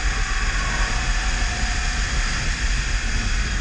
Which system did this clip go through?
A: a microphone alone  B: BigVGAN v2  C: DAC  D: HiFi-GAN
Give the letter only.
A